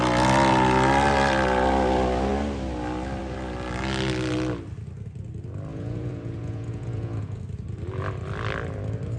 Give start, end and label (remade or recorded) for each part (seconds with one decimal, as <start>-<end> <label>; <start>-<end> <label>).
0.0-5.7 recorded; 5.7-7.4 remade; 7.4-9.2 recorded